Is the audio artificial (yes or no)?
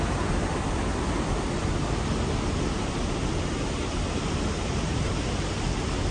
yes